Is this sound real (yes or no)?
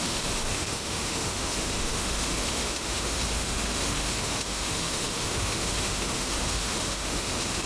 no